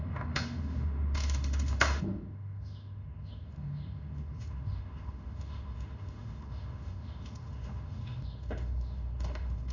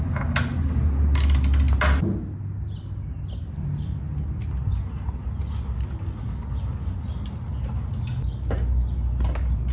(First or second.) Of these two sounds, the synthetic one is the first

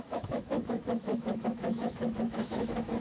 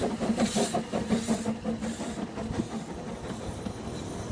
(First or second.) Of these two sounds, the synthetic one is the first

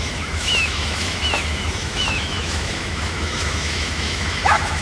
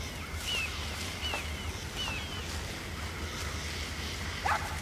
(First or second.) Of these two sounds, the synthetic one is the first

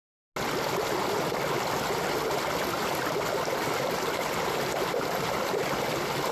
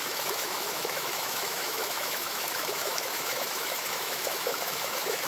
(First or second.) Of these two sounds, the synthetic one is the second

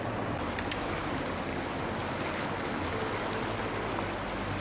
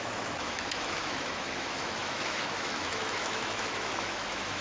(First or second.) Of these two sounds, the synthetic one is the second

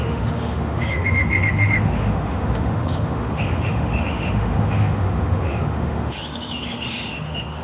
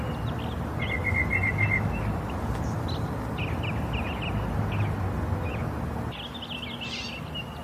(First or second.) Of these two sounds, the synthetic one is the first